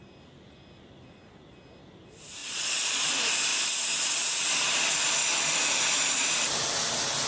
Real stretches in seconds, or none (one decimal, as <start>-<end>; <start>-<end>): 0.0-2.4; 3.1-7.3